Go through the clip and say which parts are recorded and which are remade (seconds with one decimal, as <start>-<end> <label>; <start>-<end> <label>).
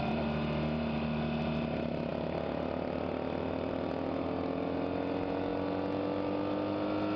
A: 0.0-7.2 recorded